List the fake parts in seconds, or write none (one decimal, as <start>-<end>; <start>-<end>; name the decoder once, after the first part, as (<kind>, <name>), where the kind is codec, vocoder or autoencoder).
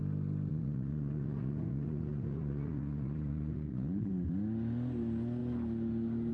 0.5-4.1 (vocoder, Vocos)